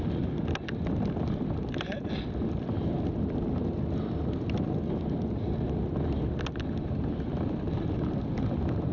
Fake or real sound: real